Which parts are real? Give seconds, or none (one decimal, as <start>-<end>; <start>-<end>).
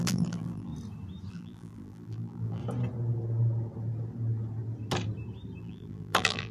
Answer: 0.7-1.3; 2.6-5.6